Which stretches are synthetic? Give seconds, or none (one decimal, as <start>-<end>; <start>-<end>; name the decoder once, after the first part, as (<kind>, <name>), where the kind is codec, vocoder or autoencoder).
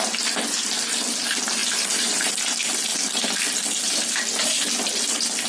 1.6-2.4 (vocoder, BigVGAN v2); 2.9-3.9